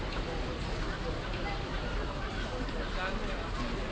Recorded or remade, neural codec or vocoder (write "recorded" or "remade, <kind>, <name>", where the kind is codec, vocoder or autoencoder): recorded